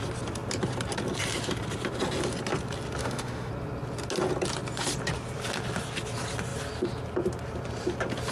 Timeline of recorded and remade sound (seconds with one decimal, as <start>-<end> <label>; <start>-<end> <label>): 0.0-3.0 recorded; 3.0-3.5 remade; 3.5-8.3 recorded